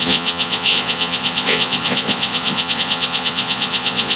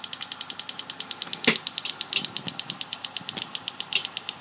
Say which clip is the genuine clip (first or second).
second